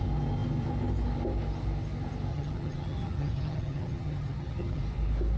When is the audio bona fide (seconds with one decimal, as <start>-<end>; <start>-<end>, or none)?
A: 0.0-2.3; 4.8-5.4